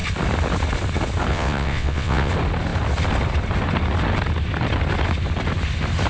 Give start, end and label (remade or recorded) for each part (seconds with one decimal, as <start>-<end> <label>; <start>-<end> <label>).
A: 0.0-1.3 recorded; 1.3-2.3 remade; 2.3-6.1 recorded